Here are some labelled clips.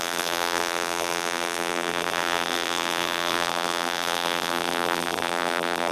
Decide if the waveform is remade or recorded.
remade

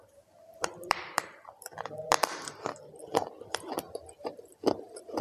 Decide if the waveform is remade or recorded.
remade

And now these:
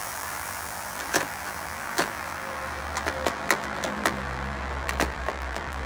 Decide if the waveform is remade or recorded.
remade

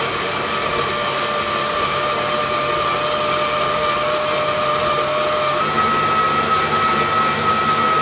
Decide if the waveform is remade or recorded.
recorded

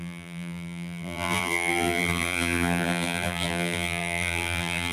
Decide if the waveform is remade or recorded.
remade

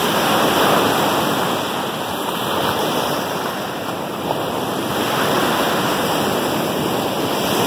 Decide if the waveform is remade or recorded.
remade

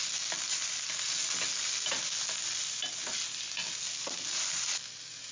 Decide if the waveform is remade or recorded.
recorded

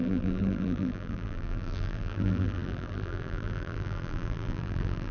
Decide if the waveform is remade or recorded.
remade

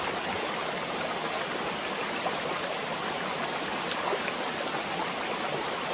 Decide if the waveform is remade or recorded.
recorded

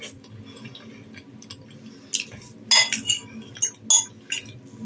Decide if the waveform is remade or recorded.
recorded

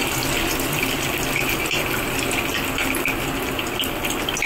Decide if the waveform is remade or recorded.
recorded